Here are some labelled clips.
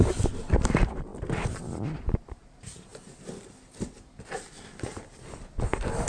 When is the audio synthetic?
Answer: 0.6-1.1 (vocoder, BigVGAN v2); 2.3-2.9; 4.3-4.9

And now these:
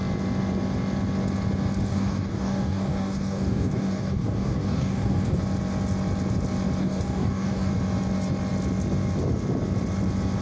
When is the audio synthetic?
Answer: 1.9-5.4 (codec, DAC); 6.8-7.7

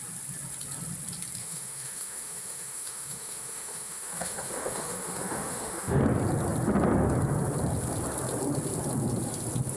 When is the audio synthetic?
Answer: 1.4-6.0 (autoencoder, DAC-VAE)